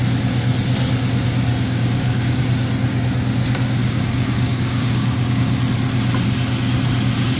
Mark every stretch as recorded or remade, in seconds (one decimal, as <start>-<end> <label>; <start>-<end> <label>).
0.0-1.5 recorded; 1.5-2.4 remade; 2.4-3.8 recorded; 3.8-5.5 remade; 5.5-7.4 recorded